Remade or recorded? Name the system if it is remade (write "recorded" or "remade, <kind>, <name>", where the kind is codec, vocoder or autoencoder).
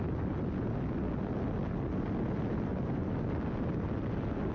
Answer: recorded